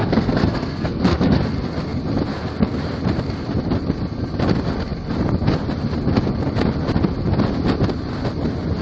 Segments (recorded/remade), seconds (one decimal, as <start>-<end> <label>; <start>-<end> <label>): 0.0-1.4 remade; 1.4-8.8 recorded